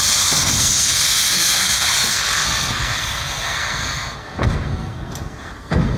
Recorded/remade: remade